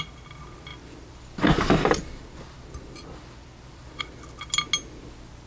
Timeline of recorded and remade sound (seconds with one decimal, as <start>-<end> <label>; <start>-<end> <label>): 0.0-0.7 recorded; 0.7-4.0 remade; 4.0-5.5 recorded